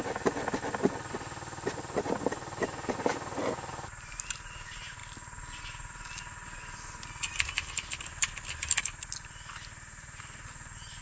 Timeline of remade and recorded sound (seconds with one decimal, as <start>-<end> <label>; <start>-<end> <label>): 0.0-11.0 recorded